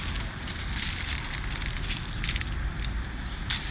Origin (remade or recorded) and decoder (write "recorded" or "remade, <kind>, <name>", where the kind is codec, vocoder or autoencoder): recorded